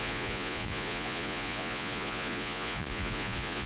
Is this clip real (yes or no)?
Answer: no